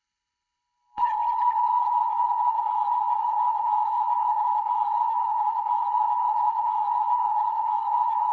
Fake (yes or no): yes